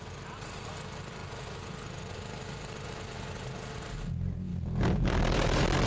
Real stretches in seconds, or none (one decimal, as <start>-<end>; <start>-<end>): 0.0-5.9